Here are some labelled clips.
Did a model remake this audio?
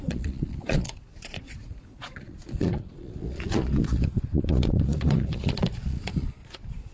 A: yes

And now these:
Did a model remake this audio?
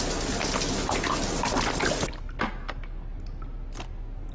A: no